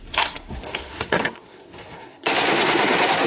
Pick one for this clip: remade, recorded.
remade